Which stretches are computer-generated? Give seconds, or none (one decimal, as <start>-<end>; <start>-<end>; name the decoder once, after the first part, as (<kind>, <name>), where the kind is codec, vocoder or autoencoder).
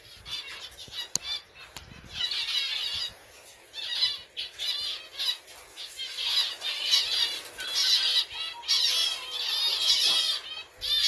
none